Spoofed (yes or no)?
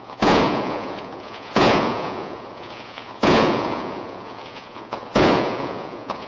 yes